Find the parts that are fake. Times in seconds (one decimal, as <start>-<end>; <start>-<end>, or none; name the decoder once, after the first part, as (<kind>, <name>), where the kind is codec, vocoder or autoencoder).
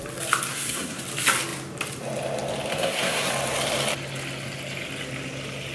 0.5-1.0 (codec, SNAC); 2.7-3.3